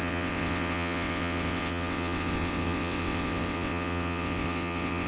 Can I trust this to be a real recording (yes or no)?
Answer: no